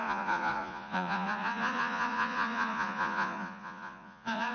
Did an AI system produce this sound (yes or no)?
yes